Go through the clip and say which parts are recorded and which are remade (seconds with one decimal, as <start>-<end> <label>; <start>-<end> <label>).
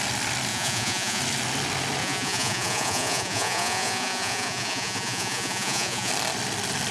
0.0-0.5 recorded; 0.5-1.2 remade; 1.2-2.0 recorded; 2.0-6.1 remade; 6.1-6.9 recorded